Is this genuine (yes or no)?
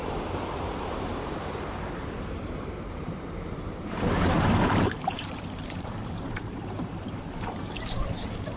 no